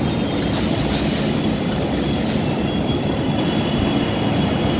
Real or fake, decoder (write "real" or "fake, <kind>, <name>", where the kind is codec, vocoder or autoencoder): real